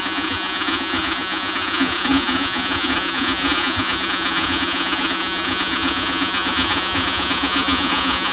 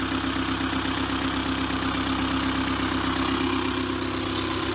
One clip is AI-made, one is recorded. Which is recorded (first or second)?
second